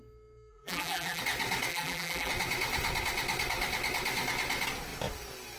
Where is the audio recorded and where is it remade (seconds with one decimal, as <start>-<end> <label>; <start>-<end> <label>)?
0.0-0.5 recorded; 0.5-1.2 remade; 1.2-1.7 recorded; 1.7-2.3 remade; 2.3-5.6 recorded